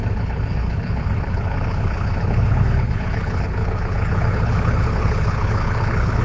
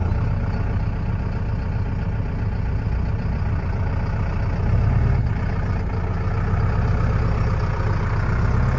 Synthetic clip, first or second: first